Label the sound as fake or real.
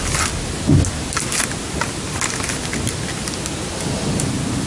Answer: real